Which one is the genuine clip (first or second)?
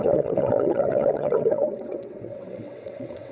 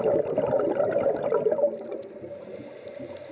second